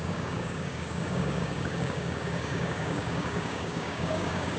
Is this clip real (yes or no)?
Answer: no